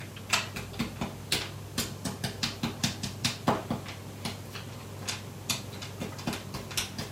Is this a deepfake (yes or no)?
no